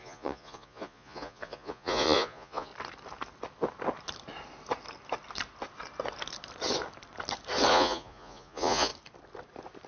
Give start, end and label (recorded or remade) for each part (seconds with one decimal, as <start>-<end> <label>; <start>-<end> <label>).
0.0-2.7 remade; 2.7-7.7 recorded; 7.7-8.9 remade; 8.9-9.9 recorded